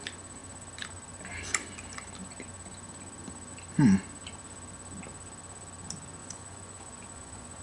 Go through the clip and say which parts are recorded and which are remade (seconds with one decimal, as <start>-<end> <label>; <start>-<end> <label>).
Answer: 0.0-6.2 recorded; 6.2-7.6 remade